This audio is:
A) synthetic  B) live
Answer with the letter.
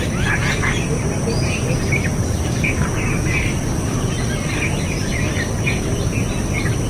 B